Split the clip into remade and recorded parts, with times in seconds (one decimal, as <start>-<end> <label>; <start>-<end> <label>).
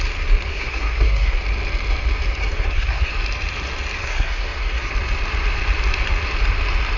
0.0-0.5 recorded; 0.5-1.4 remade; 1.4-2.4 recorded; 2.4-3.1 remade; 3.1-4.0 recorded; 4.0-4.9 remade; 4.9-7.0 recorded